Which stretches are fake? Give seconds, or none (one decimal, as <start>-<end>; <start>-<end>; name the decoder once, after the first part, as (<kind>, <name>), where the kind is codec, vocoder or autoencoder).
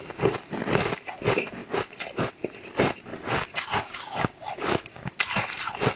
3.1-5.1 (codec, DAC)